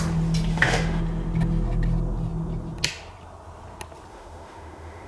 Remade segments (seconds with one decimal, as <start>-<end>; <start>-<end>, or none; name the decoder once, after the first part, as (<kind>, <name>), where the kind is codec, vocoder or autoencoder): 0.5-1.0 (autoencoder, DAC-VAE); 4.1-5.1